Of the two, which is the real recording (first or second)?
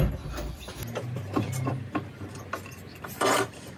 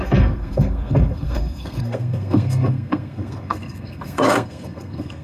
first